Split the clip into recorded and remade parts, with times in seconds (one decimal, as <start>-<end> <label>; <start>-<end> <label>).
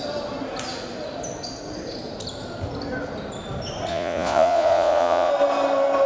0.0-3.9 recorded; 3.9-5.3 remade; 5.3-6.1 recorded